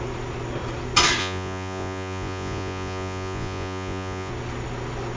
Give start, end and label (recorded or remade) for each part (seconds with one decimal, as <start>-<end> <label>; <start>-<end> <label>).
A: 0.0-1.2 recorded; 1.2-4.3 remade; 4.3-5.2 recorded